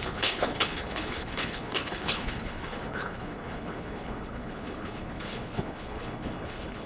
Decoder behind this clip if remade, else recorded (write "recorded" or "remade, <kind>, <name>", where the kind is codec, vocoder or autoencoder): remade, codec, HILCodec